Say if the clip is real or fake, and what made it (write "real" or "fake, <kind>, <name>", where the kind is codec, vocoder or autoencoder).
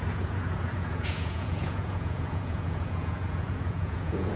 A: fake, vocoder, Vocos